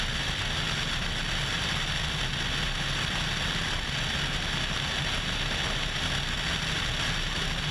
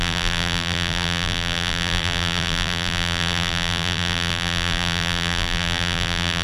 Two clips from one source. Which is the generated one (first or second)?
second